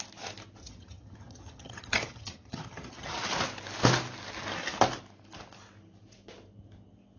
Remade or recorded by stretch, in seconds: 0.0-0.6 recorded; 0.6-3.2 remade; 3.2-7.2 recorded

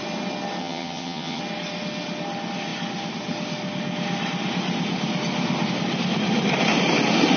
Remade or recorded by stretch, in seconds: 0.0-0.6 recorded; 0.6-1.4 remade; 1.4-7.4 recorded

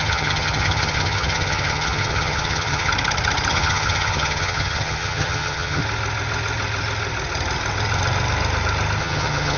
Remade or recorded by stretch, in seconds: 0.0-2.9 remade; 2.9-3.5 recorded; 3.5-5.8 remade; 5.8-9.0 recorded; 9.0-9.6 remade

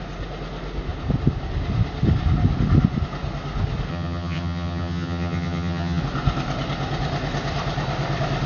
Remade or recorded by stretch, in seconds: 0.0-3.9 recorded; 3.9-6.0 remade; 6.0-8.5 recorded

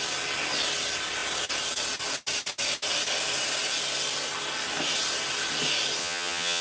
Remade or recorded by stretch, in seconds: 0.0-6.0 recorded; 6.0-6.6 remade

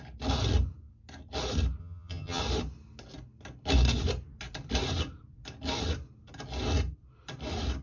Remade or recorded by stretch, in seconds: 0.0-1.8 recorded; 1.8-2.4 remade; 2.4-7.8 recorded

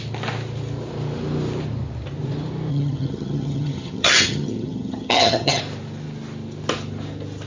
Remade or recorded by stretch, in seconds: 0.0-2.7 recorded; 2.7-5.6 remade; 5.6-7.5 recorded